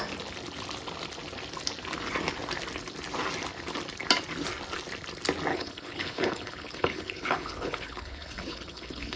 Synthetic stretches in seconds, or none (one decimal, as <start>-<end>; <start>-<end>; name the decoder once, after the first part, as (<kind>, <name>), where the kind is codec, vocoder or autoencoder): 5.5-9.2 (codec, HILCodec)